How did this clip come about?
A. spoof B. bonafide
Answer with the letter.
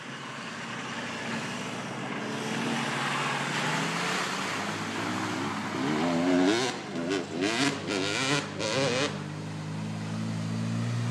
B